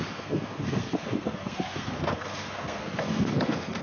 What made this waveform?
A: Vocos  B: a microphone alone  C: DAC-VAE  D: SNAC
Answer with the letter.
D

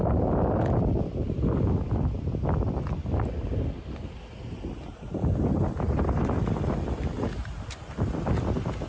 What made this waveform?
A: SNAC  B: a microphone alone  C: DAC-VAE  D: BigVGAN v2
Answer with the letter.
B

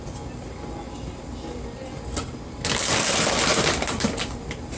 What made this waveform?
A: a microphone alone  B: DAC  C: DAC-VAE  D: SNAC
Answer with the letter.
A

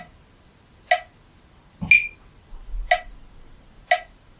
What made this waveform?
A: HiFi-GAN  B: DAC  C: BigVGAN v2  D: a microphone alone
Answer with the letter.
D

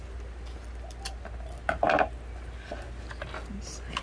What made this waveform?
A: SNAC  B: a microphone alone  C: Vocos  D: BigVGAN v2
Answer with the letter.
B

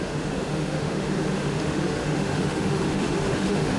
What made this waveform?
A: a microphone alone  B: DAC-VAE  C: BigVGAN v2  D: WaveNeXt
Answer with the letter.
B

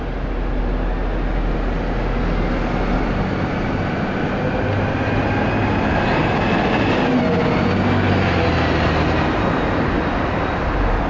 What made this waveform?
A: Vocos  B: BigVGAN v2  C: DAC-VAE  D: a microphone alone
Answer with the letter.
D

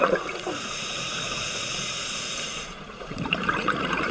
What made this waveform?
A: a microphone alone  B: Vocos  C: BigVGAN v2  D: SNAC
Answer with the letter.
B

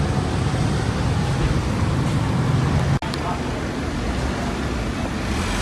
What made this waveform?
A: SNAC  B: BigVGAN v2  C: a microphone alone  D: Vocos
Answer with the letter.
C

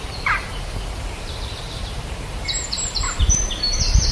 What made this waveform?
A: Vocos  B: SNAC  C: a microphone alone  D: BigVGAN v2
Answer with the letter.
D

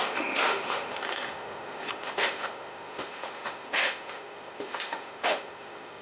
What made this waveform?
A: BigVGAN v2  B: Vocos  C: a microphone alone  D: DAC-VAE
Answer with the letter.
D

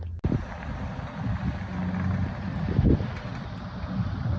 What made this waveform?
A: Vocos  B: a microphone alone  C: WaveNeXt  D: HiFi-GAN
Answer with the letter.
B